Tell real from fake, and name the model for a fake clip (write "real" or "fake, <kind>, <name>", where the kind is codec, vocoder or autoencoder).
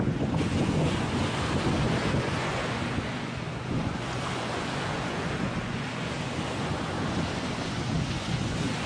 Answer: fake, vocoder, Vocos